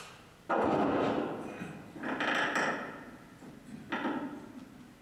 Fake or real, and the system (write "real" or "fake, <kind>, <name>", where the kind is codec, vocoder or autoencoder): real